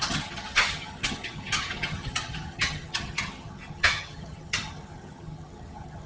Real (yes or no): no